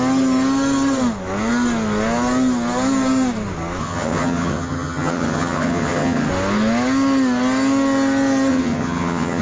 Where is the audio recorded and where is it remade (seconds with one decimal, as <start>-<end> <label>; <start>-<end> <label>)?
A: 0.0-3.8 recorded; 3.8-6.3 remade; 6.3-8.5 recorded; 8.5-9.4 remade